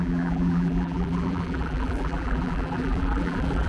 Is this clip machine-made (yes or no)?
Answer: yes